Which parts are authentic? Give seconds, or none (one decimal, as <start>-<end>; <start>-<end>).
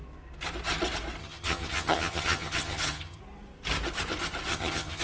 0.0-1.2; 3.2-4.5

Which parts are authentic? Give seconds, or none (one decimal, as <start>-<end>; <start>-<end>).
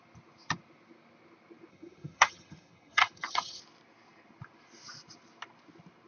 0.0-1.7; 3.6-6.1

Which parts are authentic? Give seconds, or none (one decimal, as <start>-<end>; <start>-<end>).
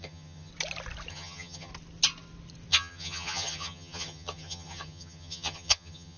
0.5-1.1; 1.7-2.7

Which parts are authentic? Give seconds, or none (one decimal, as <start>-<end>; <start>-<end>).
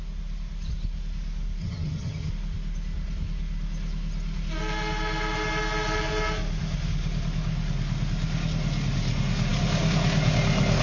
0.0-1.6; 2.3-10.8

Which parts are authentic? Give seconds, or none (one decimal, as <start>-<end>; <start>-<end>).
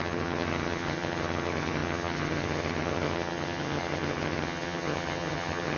none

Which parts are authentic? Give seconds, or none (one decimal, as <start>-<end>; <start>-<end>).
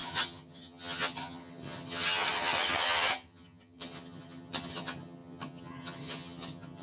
none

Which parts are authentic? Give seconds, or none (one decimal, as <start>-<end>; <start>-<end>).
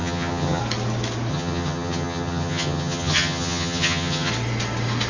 0.6-1.3; 4.3-5.1